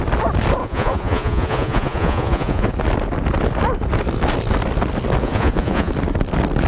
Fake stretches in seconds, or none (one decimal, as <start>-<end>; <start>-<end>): 0.6-2.7; 5.2-5.9